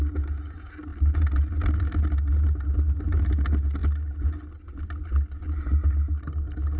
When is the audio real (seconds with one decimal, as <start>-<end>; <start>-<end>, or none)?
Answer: 0.0-6.8